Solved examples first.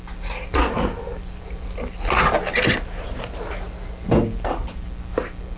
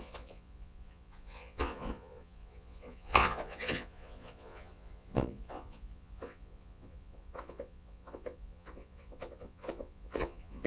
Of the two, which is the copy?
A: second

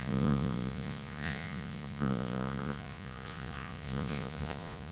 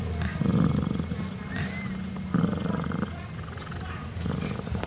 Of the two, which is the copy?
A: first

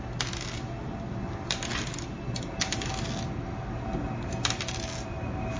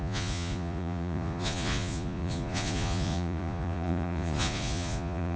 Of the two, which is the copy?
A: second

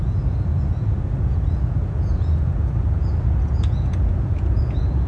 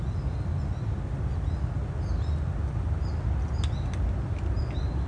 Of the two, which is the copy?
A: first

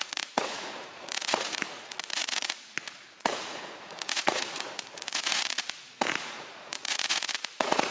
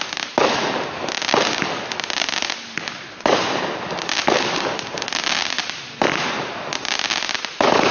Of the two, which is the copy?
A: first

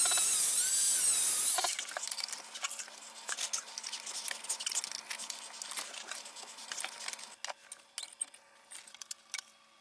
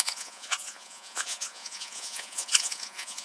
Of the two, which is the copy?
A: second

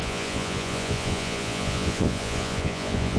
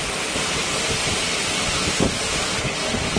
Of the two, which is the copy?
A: first